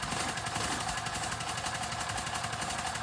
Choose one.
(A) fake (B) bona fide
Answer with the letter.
B